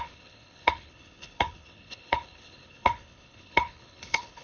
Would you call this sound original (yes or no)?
no